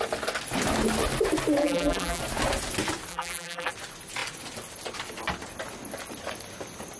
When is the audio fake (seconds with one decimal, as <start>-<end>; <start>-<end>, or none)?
1.6-2.2; 3.1-3.7